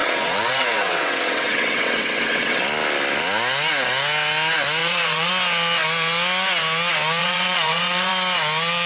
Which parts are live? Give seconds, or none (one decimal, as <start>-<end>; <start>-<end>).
2.6-4.8; 5.3-7.2; 8.1-8.9